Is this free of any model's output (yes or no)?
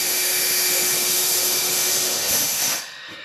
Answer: no